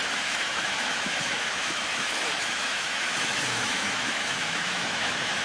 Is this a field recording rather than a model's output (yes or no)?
no